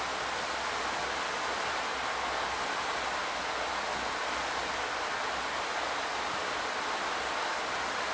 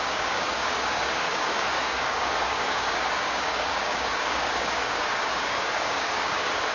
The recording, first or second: first